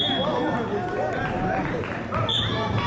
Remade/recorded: recorded